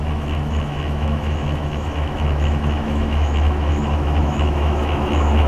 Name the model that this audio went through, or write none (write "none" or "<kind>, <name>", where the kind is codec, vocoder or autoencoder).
autoencoder, DAC-VAE